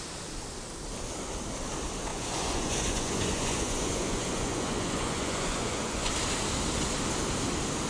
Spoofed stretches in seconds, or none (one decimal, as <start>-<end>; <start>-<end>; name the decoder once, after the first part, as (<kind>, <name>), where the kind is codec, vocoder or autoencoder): 2.1-6.1 (vocoder, Vocos)